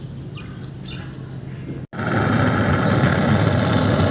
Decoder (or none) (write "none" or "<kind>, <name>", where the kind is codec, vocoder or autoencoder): none